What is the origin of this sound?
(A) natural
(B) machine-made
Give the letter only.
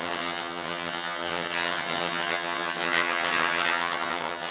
B